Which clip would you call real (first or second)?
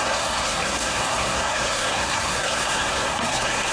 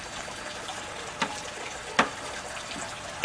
second